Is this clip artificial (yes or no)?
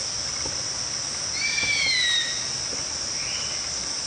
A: no